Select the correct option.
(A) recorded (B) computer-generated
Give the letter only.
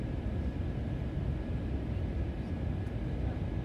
A